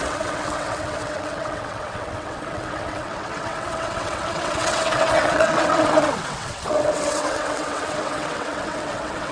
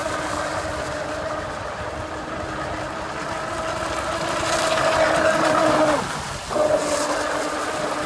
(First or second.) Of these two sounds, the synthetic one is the first